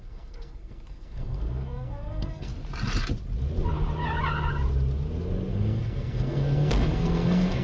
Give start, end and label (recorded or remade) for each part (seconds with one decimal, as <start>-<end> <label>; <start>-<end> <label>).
0.0-2.5 remade; 2.5-5.5 recorded; 5.5-7.6 remade